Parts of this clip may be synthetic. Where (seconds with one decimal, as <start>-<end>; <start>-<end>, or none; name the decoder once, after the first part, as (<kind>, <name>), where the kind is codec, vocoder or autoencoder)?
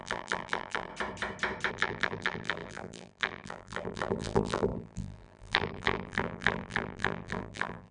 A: 0.0-0.9 (vocoder, BigVGAN v2); 1.7-7.9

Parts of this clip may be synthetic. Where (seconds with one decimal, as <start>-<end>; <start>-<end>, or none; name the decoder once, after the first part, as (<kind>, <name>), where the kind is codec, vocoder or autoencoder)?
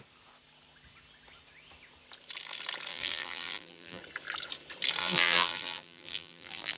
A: 2.9-4.0 (vocoder, BigVGAN v2); 5.0-6.8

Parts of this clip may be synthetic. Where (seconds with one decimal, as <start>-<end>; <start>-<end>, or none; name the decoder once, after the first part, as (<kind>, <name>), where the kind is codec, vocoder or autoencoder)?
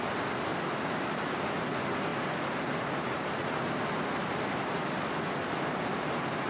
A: 2.1-3.5 (vocoder, BigVGAN v2)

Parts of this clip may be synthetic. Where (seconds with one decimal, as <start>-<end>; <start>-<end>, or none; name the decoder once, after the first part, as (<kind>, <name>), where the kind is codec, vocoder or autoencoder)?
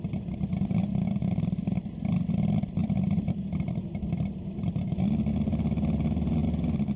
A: none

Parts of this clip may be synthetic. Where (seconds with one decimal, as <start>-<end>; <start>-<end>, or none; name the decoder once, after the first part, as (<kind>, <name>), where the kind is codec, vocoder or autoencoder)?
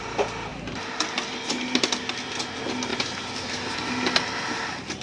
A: 0.5-2.1 (vocoder, BigVGAN v2); 2.9-5.0